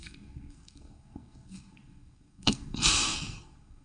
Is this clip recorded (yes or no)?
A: no